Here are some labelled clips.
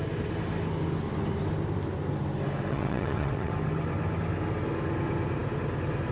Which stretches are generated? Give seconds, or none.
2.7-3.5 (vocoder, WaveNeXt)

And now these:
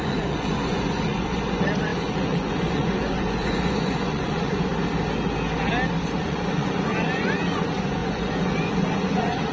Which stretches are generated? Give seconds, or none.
0.0-4.7 (vocoder, Vocos); 6.0-9.5

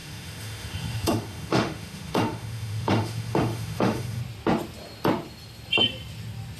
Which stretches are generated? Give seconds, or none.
0.0-4.2 (autoencoder, DAC-VAE)

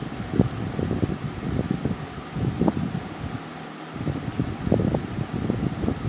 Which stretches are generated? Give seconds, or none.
none

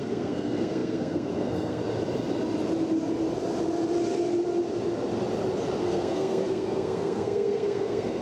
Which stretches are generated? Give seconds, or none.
0.0-1.8 (codec, SNAC); 5.8-8.2

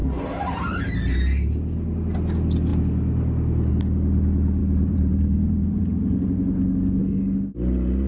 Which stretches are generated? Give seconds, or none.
0.0-0.8 (vocoder, BigVGAN v2); 4.6-5.8